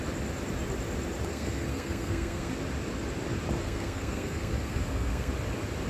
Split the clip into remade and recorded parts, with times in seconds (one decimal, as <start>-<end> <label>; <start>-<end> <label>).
0.0-1.3 recorded; 1.3-2.5 remade; 2.5-3.6 recorded; 3.6-5.3 remade; 5.3-5.9 recorded